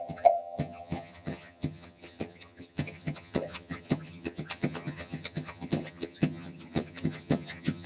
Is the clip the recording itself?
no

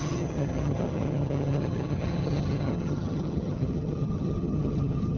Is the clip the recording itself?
no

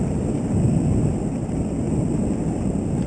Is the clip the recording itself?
yes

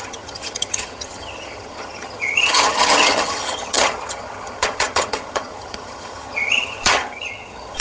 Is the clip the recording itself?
no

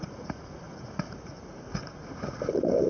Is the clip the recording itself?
no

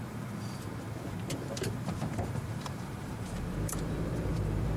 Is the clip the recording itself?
no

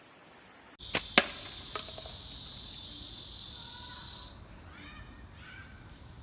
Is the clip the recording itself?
yes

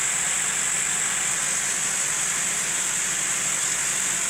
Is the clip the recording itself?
yes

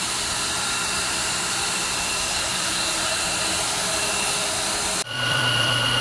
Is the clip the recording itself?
no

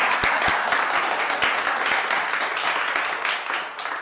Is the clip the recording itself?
yes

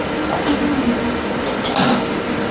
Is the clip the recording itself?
yes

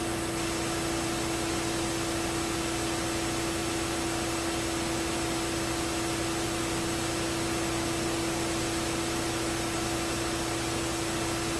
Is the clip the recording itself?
yes